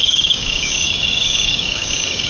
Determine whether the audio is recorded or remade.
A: remade